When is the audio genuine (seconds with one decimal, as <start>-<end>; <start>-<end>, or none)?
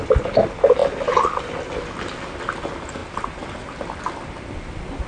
0.0-5.1